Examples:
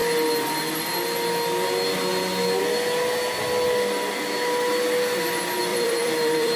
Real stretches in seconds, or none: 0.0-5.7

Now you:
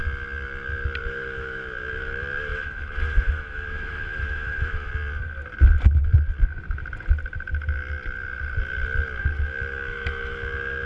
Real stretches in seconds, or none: 0.0-1.0; 4.9-9.2

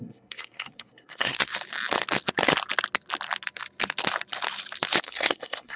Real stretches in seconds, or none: 1.5-5.0

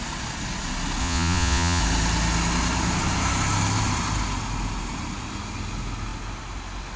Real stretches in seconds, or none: 0.0-1.0; 1.8-7.0

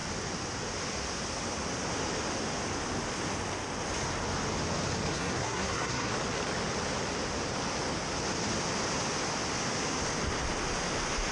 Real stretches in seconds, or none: 0.0-5.1; 6.1-11.3

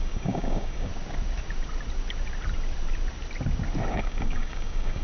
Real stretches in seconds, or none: 0.9-3.9

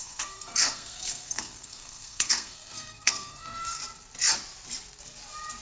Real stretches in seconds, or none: 3.8-5.6

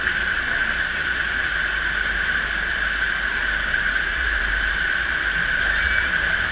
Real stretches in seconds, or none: 0.0-3.7; 4.4-6.5